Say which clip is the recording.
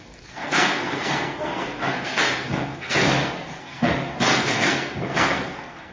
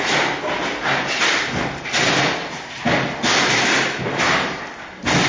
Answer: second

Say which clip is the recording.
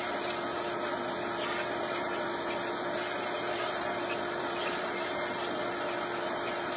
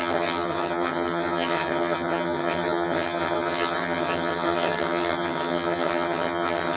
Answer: first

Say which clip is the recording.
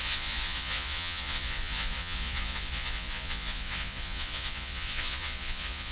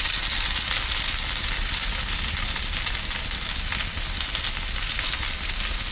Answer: second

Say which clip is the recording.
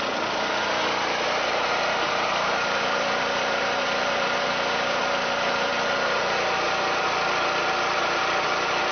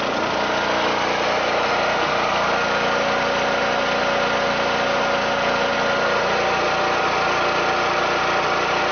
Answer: second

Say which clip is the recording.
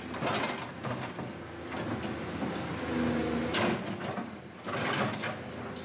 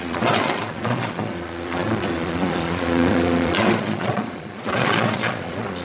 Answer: first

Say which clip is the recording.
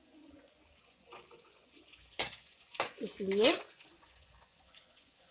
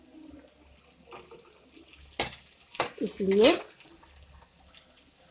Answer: second